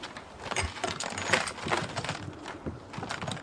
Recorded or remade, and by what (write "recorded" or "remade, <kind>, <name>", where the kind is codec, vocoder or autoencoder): recorded